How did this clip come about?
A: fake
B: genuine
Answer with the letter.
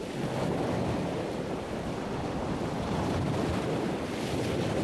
B